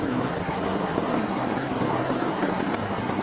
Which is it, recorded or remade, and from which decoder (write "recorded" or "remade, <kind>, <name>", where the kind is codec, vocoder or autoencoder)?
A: remade, codec, SNAC